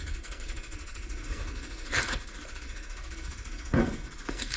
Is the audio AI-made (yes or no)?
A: yes